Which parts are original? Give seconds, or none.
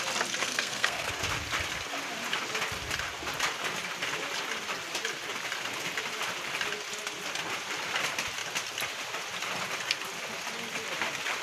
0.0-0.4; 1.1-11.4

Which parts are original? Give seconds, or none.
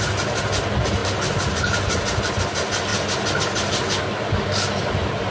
0.0-5.3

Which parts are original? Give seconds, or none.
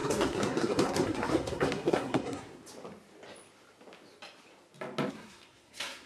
2.6-5.1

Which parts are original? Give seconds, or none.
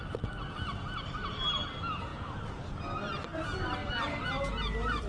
0.0-5.1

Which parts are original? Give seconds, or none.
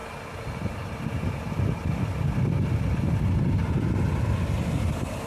0.0-5.3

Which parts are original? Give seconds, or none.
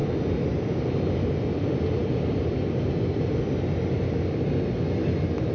0.0-5.5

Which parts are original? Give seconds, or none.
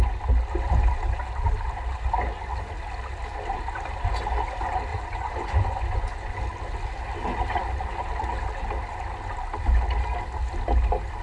0.0-4.9; 6.4-11.2